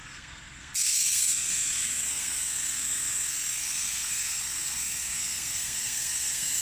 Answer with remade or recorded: remade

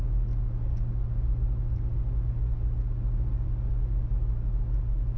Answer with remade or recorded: recorded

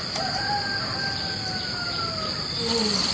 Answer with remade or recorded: remade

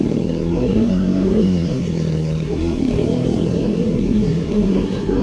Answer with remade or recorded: remade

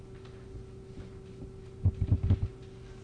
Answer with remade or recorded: recorded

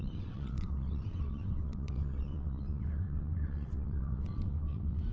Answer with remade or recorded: remade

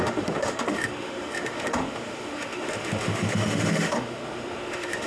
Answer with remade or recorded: remade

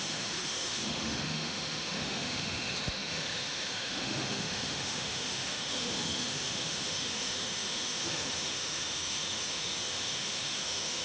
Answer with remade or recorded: remade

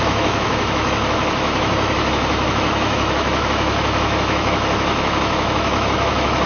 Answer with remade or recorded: remade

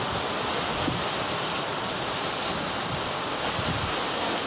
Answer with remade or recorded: recorded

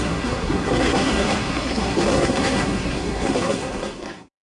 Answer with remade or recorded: remade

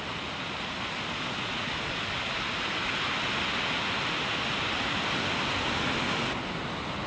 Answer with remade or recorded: recorded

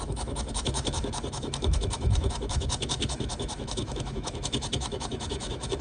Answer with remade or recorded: remade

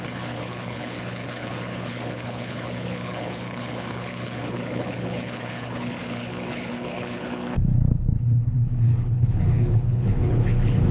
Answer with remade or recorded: remade